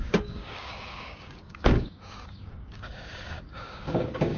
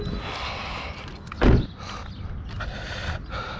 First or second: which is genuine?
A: second